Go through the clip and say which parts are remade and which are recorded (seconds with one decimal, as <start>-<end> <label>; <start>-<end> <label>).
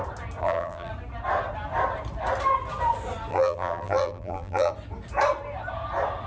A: 0.0-0.4 recorded; 0.4-0.9 remade; 0.9-3.3 recorded; 3.3-4.7 remade; 4.7-6.3 recorded